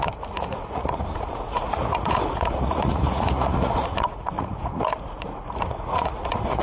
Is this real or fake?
fake